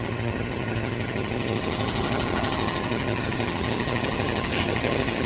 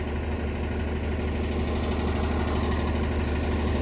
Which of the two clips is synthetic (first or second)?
first